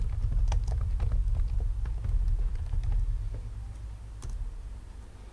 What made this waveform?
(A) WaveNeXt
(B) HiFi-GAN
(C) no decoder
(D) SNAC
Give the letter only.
C